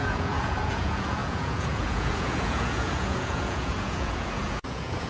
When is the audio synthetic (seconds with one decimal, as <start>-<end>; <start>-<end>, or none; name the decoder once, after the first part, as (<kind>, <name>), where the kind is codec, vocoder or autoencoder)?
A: 0.0-5.1 (vocoder, Vocos)